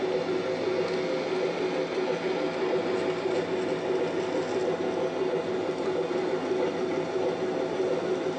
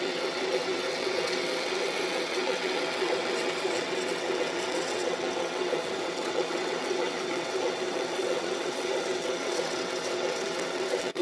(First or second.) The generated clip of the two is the second